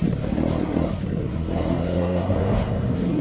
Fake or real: fake